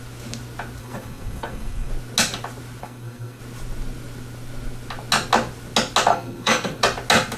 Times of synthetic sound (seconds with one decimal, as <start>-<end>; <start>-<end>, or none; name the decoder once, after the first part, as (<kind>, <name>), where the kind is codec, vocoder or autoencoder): 0.8-1.9 (codec, SNAC); 2.8-3.4; 6.1-6.8